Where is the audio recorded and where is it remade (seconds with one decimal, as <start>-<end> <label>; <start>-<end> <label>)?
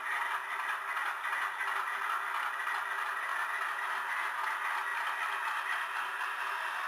0.0-6.9 recorded